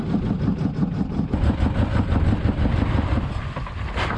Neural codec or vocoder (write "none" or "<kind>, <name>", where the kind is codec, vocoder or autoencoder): none